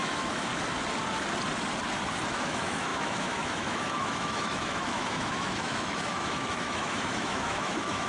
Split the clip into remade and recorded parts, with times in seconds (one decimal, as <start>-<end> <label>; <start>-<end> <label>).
0.0-0.5 remade; 0.5-2.3 recorded; 2.3-8.1 remade